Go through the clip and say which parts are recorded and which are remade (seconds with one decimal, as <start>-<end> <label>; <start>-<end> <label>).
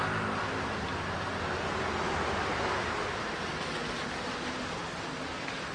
0.0-5.7 recorded